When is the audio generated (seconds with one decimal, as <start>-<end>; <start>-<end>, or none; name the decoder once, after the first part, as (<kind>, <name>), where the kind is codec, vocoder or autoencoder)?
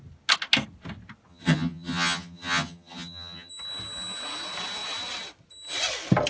1.3-3.5 (vocoder, HiFi-GAN)